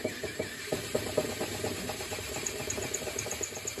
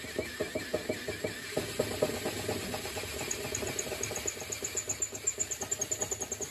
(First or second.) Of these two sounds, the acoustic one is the second